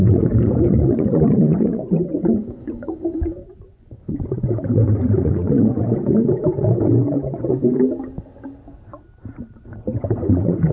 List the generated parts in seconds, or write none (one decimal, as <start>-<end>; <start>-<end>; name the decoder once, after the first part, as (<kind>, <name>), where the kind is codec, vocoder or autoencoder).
0.0-7.6 (vocoder, Vocos); 9.6-10.7